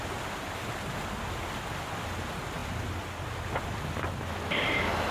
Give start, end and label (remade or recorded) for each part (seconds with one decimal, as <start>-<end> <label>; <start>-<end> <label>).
0.0-5.1 recorded